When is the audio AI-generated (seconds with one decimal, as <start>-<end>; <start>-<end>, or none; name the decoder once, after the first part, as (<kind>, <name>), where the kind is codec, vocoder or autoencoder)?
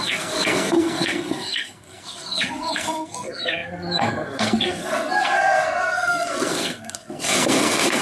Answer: 0.0-8.0 (codec, SNAC)